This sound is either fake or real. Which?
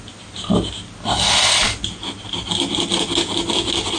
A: real